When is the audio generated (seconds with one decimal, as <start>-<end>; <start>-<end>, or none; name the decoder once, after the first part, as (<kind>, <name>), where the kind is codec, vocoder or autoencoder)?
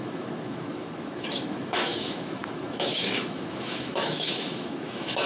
0.0-5.3 (autoencoder, DAC-VAE)